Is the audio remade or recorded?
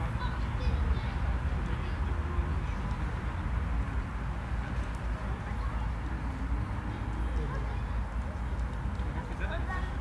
recorded